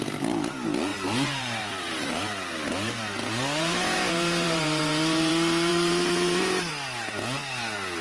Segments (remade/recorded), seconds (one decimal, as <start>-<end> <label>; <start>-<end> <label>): 0.0-0.9 recorded; 0.9-5.3 remade; 5.3-5.7 recorded; 5.7-6.7 remade; 6.7-8.0 recorded